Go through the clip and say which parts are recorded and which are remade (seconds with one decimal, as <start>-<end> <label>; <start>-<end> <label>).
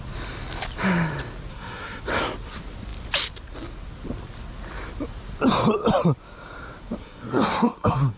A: 0.0-1.5 recorded; 1.5-2.0 remade; 2.0-7.0 recorded; 7.0-8.2 remade